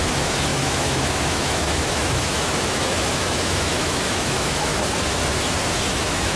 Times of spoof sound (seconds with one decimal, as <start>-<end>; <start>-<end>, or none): 0.0-4.7; 5.9-6.4